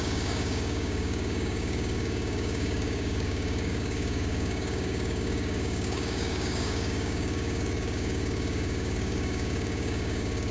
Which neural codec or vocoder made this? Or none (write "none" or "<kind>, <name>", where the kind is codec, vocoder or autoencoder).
codec, DAC